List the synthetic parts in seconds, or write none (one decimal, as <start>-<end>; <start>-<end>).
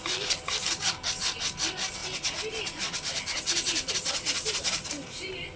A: none